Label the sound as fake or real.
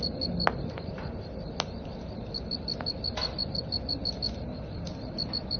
real